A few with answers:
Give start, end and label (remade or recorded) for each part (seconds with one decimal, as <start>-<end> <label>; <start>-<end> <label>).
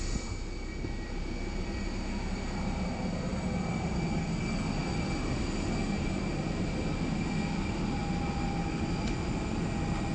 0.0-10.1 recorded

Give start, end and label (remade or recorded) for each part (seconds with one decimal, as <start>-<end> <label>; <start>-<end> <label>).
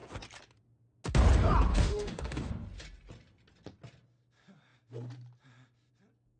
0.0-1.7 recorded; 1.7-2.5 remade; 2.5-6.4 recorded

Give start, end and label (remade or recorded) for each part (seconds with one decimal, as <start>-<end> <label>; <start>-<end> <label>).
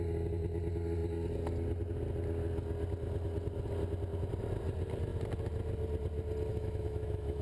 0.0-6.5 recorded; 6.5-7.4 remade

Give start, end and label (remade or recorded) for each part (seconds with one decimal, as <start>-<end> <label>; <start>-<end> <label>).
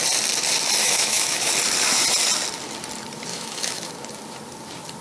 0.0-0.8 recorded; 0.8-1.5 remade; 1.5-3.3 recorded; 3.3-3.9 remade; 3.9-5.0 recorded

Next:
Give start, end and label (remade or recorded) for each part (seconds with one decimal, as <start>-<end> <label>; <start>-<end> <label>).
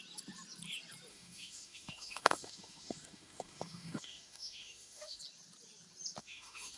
0.0-1.1 recorded; 1.1-5.2 remade; 5.2-6.2 recorded; 6.2-6.8 remade